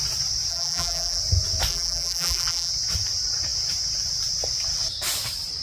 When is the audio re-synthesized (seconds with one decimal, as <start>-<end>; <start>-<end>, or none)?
0.5-1.2; 1.7-2.7